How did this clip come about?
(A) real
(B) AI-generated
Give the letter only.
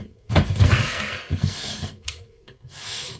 B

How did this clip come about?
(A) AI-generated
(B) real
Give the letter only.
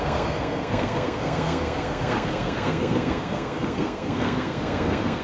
A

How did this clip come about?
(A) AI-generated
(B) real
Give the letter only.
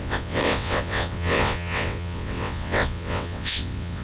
A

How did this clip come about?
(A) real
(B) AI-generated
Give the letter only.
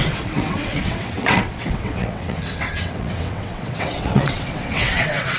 B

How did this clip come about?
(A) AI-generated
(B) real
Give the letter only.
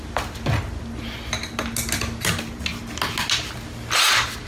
B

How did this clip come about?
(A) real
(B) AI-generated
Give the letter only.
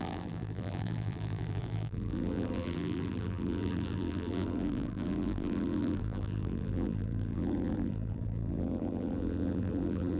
B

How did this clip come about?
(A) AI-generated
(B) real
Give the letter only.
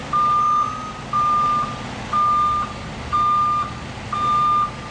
B